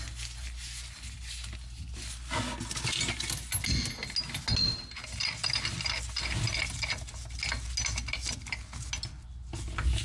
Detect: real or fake real